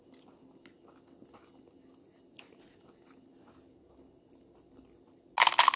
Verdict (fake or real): real